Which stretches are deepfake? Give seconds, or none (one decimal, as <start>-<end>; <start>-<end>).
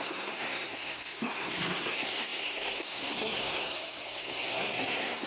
0.0-5.3